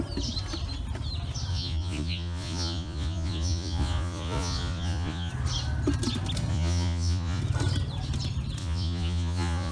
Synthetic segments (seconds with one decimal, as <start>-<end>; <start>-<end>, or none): 1.5-5.3; 6.5-7.4; 8.6-9.7